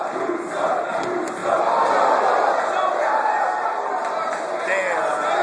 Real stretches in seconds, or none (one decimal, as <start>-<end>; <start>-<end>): 0.0-5.4